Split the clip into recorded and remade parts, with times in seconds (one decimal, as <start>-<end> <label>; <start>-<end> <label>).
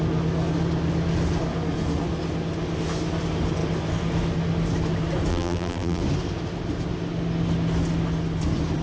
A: 0.0-5.3 recorded; 5.3-6.0 remade; 6.0-8.8 recorded